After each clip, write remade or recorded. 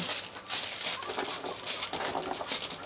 recorded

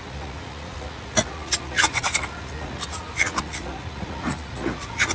remade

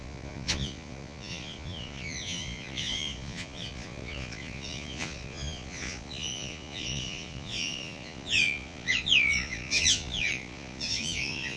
remade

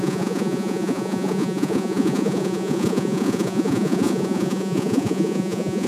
remade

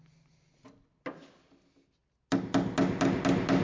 recorded